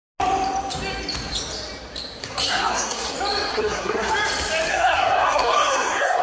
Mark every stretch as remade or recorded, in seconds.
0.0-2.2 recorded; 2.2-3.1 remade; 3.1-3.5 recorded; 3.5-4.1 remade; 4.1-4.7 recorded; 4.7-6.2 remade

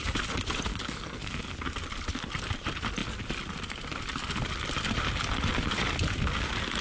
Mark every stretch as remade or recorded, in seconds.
0.0-0.7 recorded; 0.7-1.4 remade; 1.4-6.8 recorded

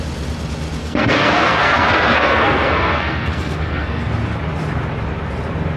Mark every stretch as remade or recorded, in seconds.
0.0-0.8 recorded; 0.8-4.1 remade; 4.1-5.8 recorded